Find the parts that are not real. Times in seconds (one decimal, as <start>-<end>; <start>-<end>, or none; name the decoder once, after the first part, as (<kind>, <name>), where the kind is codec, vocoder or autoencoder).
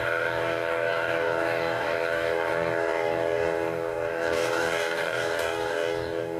0.0-6.4 (codec, DAC)